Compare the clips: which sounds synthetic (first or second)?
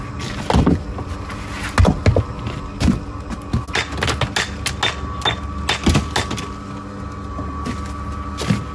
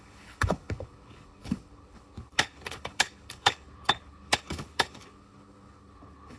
second